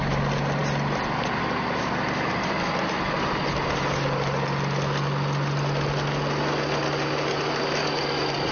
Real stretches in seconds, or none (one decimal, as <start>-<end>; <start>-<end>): 0.0-8.5